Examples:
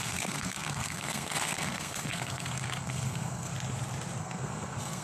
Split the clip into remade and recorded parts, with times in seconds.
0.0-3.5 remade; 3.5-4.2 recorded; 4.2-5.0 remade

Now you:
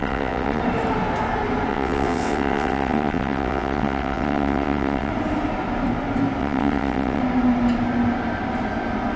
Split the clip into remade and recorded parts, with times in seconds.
0.0-0.6 remade; 0.6-1.7 recorded; 1.7-5.1 remade; 5.1-6.4 recorded; 6.4-7.2 remade; 7.2-9.2 recorded

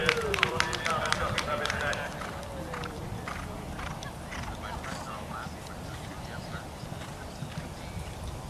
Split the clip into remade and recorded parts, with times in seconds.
0.0-3.5 remade; 3.5-8.5 recorded